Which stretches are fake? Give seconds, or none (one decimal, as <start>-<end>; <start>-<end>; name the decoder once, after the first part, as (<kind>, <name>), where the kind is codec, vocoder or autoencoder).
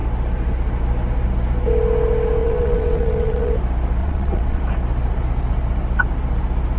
2.4-3.5 (vocoder, WaveNeXt); 4.0-4.6